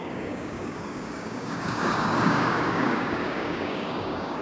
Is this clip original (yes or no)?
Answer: no